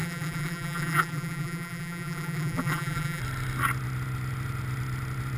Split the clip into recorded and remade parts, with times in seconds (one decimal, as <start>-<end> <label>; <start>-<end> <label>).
0.0-3.2 remade; 3.2-5.4 recorded